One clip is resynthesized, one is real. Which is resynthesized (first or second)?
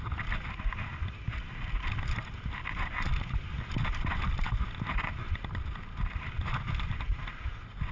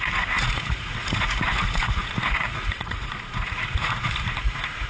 second